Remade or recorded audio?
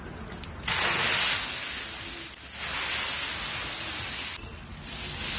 recorded